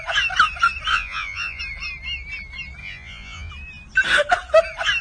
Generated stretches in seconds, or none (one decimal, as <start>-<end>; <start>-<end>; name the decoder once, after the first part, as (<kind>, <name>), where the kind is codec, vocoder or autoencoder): 0.9-1.6 (vocoder, Vocos); 2.8-3.5